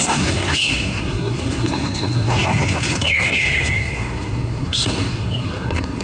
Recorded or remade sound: remade